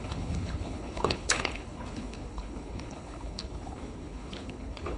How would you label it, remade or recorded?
remade